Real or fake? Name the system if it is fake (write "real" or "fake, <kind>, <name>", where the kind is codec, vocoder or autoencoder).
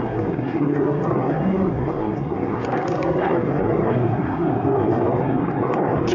fake, codec, SNAC